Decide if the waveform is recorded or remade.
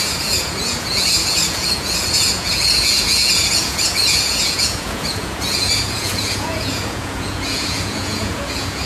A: remade